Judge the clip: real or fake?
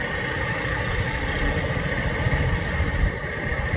real